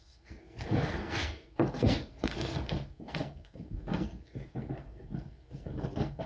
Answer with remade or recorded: remade